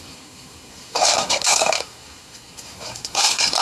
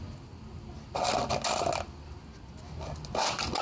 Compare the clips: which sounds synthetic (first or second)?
first